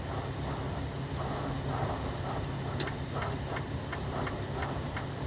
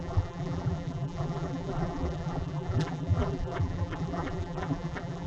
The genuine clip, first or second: first